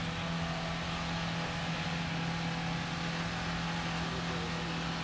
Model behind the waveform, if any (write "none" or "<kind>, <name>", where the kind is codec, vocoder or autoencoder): none